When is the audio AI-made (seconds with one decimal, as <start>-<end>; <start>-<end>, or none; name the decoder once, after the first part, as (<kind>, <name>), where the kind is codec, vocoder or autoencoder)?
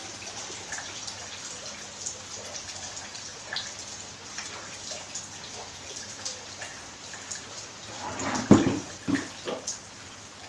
none